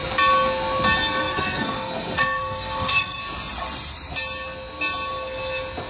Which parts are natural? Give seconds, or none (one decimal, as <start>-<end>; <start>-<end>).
0.0-1.2; 3.2-5.9